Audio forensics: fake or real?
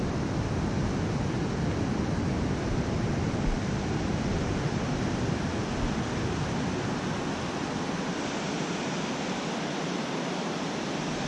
real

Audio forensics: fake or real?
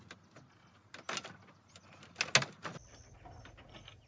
real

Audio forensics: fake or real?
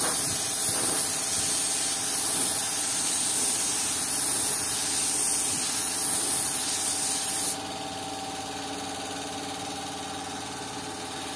real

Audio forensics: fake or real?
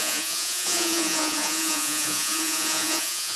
fake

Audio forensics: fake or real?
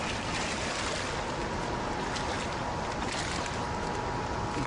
real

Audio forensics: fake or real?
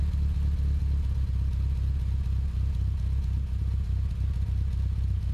real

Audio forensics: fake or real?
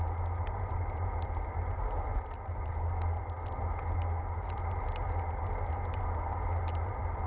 real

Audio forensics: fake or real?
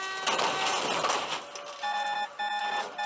real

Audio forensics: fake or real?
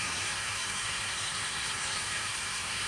fake